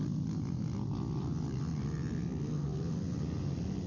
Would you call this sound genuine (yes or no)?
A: yes